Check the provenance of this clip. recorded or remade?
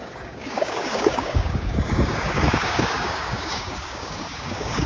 remade